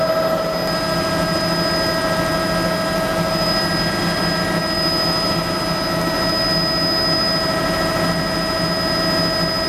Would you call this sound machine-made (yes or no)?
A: no